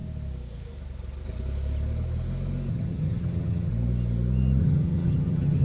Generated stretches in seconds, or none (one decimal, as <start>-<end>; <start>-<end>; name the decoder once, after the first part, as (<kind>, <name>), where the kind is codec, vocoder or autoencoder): 2.7-3.7 (vocoder, HiFi-GAN); 4.6-5.6